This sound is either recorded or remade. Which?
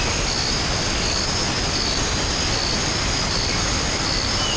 recorded